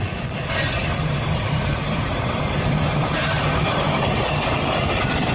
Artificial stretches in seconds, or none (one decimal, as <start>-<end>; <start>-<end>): 0.8-3.4